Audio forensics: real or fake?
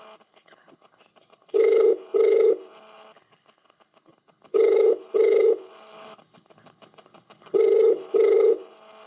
fake